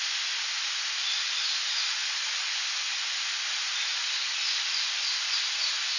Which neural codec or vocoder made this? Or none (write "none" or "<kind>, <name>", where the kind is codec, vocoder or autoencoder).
none